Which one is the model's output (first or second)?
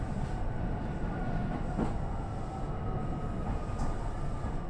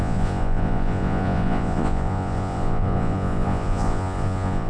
second